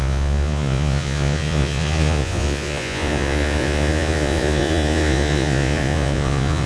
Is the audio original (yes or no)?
no